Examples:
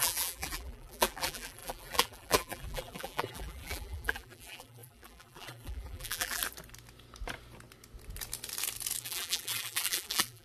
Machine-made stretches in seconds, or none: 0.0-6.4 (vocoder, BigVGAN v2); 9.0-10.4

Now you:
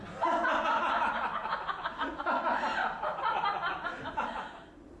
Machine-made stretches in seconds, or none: none

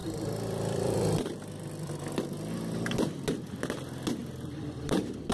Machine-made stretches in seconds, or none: 0.0-2.5 (vocoder, BigVGAN v2); 4.2-5.3

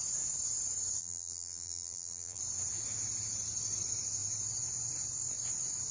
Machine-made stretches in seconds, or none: 1.0-2.4 (vocoder, BigVGAN v2)